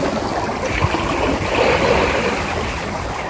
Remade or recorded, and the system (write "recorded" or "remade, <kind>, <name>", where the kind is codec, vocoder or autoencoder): recorded